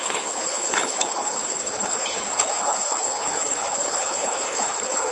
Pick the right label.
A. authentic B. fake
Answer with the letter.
B